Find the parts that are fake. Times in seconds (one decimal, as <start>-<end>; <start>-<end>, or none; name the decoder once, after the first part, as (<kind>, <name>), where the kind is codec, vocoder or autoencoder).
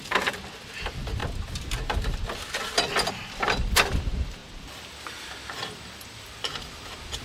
0.0-1.2 (vocoder, BigVGAN v2); 3.1-4.4; 4.9-7.2